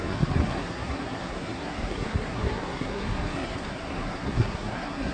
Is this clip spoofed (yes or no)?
yes